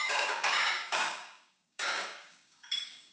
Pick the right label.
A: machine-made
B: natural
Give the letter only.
A